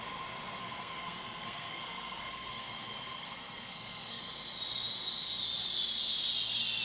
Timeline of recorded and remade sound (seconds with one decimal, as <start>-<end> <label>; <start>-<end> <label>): 0.0-0.6 recorded; 0.6-4.2 remade; 4.2-6.8 recorded